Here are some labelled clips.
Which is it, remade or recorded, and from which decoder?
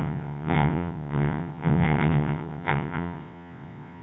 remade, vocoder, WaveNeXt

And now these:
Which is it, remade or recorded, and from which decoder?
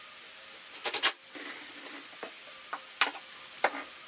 recorded